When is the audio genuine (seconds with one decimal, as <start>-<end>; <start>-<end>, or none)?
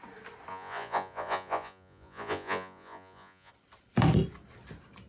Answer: 0.0-0.5; 3.5-5.1